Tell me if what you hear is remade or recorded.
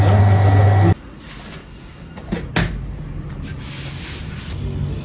recorded